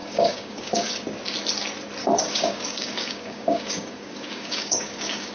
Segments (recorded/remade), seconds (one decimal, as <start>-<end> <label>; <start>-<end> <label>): 0.0-0.9 remade; 0.9-2.0 recorded; 2.0-5.3 remade